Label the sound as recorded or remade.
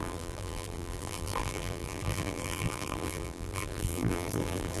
remade